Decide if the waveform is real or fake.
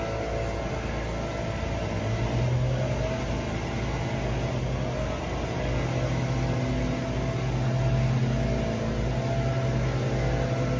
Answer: real